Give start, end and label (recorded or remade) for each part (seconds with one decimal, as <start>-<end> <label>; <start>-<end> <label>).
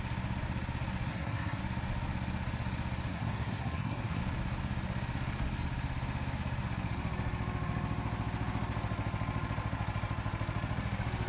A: 0.0-1.1 recorded; 1.1-1.6 remade; 1.6-3.1 recorded; 3.1-4.2 remade; 4.2-11.3 recorded